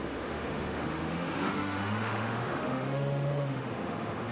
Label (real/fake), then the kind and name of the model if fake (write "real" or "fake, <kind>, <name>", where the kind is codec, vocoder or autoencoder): fake, autoencoder, DAC-VAE